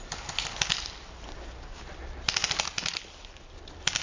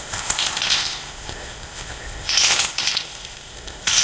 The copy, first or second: second